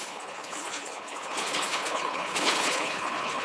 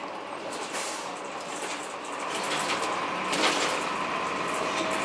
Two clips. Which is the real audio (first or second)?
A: second